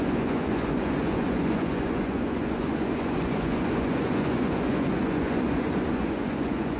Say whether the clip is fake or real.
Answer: fake